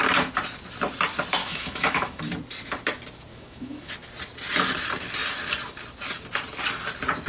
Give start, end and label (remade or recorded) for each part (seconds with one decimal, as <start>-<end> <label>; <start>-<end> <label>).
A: 0.0-1.4 recorded; 1.4-2.2 remade; 2.2-3.3 recorded; 3.3-3.9 remade; 3.9-7.3 recorded